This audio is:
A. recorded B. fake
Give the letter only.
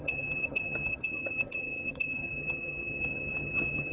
B